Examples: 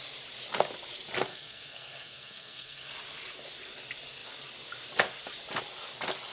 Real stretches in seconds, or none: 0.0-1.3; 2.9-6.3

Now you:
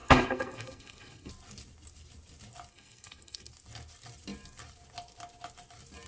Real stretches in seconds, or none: 1.3-2.7; 3.5-6.1

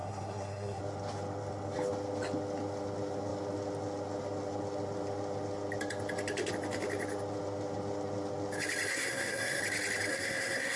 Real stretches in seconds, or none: 0.8-8.9; 9.6-10.1

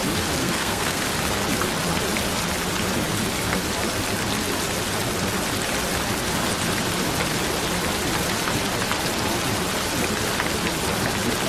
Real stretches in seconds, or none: 0.0-0.4; 1.0-11.5

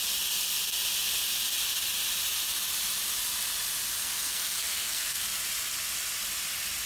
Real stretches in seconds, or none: 0.0-4.0; 5.2-6.9

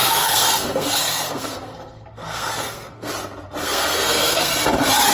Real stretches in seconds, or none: 3.1-3.6; 4.5-5.1

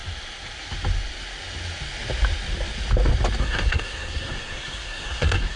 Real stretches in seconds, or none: 0.0-3.4

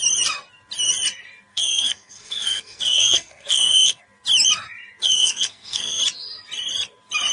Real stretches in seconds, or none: 0.0-1.5; 4.0-5.0; 6.0-7.3